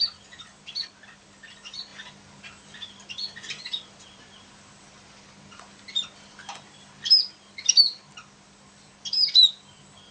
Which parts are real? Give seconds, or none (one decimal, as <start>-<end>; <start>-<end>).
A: 0.0-10.1